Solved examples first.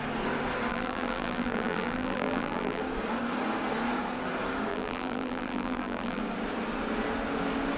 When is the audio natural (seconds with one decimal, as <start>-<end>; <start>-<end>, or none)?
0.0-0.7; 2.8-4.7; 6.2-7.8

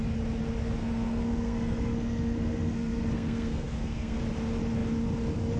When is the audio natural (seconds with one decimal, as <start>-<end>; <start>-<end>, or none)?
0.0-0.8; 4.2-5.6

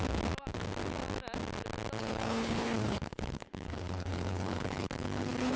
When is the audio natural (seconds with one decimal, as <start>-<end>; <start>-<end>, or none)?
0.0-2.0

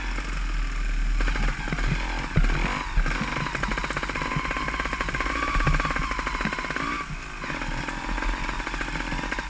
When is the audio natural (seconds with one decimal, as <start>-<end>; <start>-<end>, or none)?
0.0-9.5